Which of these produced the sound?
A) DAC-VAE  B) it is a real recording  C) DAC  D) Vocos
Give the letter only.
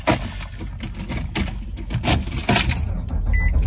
B